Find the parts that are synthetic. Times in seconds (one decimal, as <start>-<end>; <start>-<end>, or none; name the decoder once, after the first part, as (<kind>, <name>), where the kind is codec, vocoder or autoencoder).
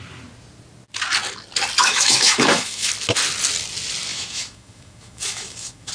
1.8-2.9 (autoencoder, DAC-VAE); 4.1-5.9